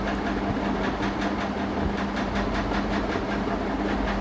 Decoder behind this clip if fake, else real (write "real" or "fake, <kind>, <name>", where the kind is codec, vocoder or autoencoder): real